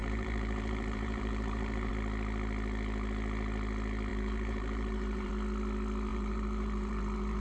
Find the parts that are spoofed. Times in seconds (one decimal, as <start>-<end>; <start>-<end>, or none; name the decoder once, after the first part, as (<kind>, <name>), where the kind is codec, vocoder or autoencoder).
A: 0.0-1.9 (vocoder, BigVGAN v2); 4.1-5.3; 6.1-7.4